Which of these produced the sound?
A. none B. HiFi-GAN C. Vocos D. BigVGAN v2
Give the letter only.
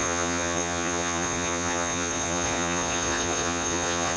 C